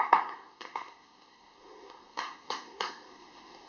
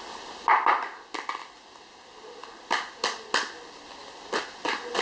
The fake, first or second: first